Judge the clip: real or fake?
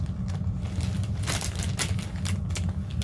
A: real